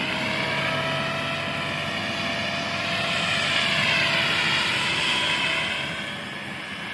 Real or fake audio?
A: real